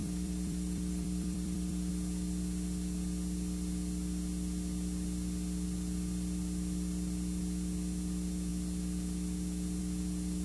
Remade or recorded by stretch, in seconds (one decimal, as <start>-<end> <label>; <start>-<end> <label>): 0.0-1.9 remade; 1.9-10.4 recorded